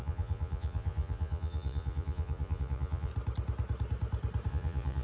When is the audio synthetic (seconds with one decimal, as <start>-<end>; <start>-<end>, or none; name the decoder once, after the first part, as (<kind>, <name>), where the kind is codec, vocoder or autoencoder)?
0.0-3.1 (vocoder, Vocos); 4.5-5.0

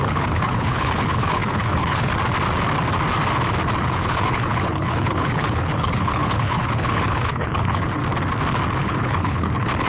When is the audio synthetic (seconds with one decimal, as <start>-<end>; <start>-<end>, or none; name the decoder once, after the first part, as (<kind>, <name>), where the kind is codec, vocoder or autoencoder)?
0.0-2.1 (codec, HILCodec); 3.8-8.0; 8.8-9.9

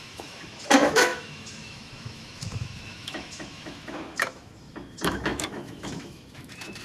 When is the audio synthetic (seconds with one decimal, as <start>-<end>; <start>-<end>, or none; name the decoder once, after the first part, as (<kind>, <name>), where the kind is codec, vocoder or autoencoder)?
0.0-6.8 (autoencoder, DAC-VAE)

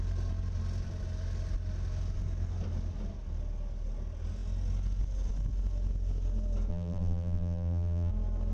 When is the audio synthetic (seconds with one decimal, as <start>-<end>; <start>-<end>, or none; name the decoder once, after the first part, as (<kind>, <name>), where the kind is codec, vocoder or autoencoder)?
6.7-8.1 (vocoder, BigVGAN v2)

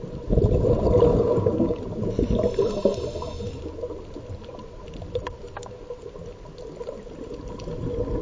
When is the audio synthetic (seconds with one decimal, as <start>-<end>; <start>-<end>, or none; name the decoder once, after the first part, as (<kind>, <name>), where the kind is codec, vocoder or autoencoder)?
1.1-1.8 (codec, DAC)